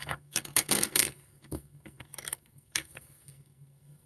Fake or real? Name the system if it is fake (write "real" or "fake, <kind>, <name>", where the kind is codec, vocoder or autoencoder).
fake, codec, SNAC